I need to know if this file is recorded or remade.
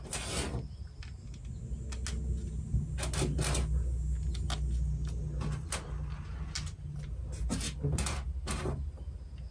recorded